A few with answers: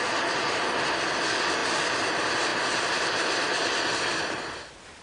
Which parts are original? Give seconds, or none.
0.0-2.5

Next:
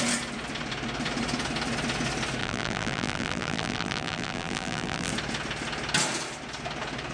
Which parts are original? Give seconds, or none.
0.0-2.4; 5.1-7.1

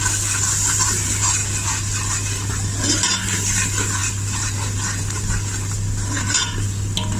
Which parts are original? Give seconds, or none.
0.0-7.2

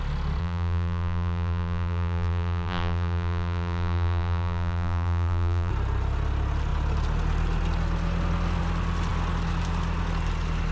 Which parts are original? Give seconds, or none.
0.0-0.4; 5.7-10.7

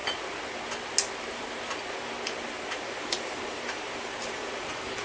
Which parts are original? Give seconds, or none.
0.0-2.9